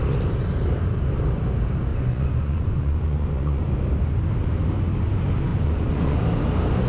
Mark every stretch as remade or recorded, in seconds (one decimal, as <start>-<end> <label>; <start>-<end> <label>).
0.0-1.9 recorded; 1.9-3.7 remade; 3.7-5.5 recorded; 5.5-6.2 remade; 6.2-6.9 recorded